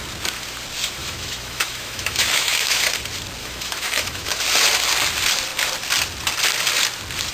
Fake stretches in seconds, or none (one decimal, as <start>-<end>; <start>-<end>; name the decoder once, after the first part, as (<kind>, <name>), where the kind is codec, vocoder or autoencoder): 1.0-2.8 (autoencoder, DAC-VAE); 3.4-4.4